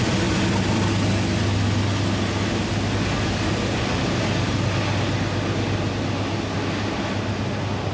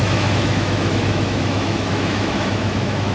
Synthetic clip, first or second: second